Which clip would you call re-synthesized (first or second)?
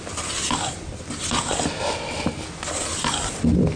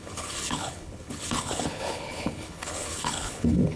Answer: second